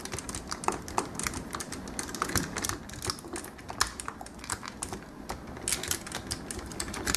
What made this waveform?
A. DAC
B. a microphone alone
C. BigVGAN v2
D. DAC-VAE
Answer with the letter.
B